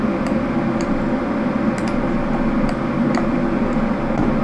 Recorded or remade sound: recorded